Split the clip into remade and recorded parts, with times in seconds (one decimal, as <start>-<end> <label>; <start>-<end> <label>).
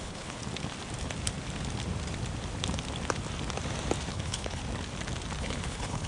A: 0.0-0.4 remade; 0.4-4.1 recorded; 4.1-4.6 remade; 4.6-5.4 recorded; 5.4-6.1 remade